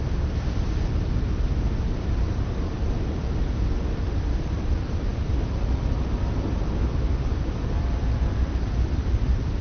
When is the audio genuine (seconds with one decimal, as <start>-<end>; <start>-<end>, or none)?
0.0-9.6